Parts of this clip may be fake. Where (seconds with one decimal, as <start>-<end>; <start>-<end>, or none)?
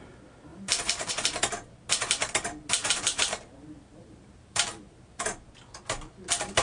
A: 0.5-1.1; 2.8-5.2